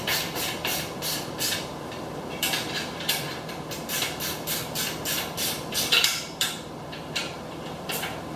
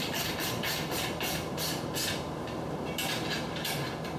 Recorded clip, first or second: second